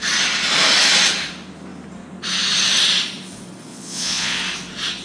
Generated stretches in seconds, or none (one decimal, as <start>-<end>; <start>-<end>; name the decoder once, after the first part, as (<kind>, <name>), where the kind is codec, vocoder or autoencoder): 3.7-4.4 (vocoder, Vocos)